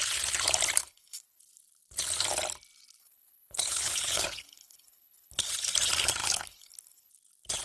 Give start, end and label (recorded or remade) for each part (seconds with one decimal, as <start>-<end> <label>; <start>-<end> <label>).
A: 0.0-0.8 recorded; 0.8-1.4 remade; 1.4-3.0 recorded; 3.0-5.7 remade; 5.7-6.2 recorded; 6.2-7.1 remade; 7.1-7.6 recorded